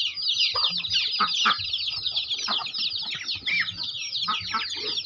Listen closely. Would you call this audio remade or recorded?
recorded